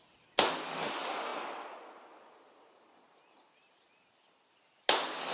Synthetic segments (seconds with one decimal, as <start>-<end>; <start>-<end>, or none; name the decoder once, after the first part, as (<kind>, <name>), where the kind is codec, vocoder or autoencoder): none